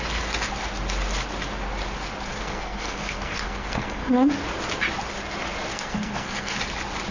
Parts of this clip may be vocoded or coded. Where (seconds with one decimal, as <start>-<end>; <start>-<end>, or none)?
2.3-4.3; 5.7-6.6

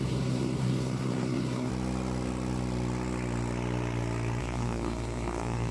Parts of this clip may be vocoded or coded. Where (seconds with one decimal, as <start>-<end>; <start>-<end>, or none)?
0.0-1.7; 4.4-5.7

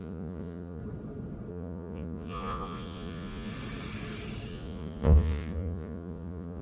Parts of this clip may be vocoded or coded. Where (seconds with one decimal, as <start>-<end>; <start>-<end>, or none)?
0.0-0.8; 1.5-3.5; 4.5-6.6

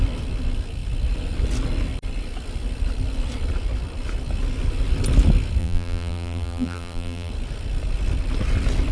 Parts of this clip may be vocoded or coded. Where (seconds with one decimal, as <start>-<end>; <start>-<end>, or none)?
5.6-7.3